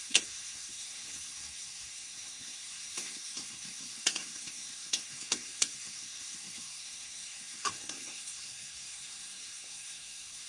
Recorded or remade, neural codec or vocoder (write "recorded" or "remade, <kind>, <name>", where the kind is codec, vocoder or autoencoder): remade, codec, SNAC